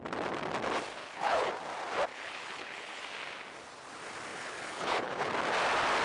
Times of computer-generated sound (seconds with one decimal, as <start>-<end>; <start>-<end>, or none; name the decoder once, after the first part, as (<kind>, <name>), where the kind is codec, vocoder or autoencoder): 1.0-1.5 (codec, HILCodec); 2.1-3.0; 4.3-5.3